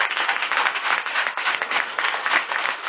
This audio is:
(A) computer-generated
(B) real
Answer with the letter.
A